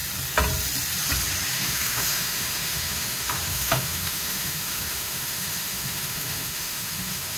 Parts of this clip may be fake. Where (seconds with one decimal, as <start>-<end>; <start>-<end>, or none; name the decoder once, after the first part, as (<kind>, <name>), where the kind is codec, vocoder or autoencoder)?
1.5-7.4 (autoencoder, DAC-VAE)